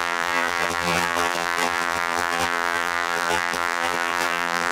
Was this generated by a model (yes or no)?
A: yes